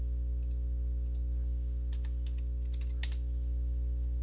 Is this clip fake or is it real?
real